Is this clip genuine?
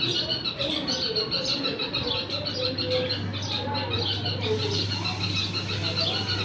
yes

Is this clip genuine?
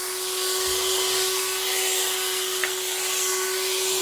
no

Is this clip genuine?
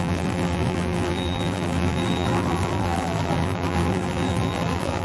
no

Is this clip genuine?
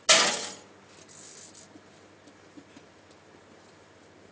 yes